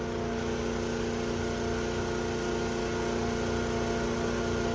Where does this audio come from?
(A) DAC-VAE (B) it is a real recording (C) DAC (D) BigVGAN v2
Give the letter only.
B